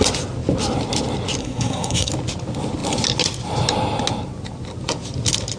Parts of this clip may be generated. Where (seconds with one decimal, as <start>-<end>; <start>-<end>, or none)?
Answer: 1.4-2.1